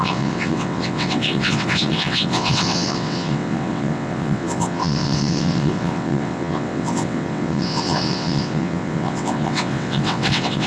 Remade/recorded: remade